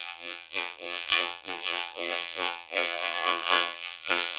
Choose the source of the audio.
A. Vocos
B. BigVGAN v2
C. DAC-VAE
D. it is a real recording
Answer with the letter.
B